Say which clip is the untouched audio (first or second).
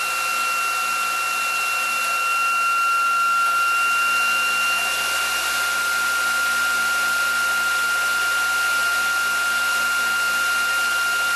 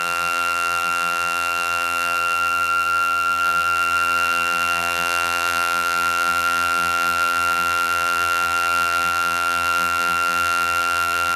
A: first